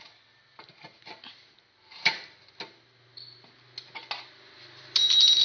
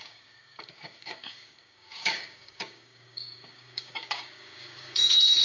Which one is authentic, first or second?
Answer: first